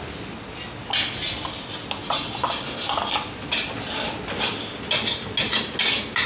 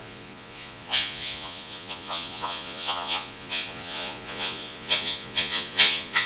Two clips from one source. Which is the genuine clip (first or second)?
first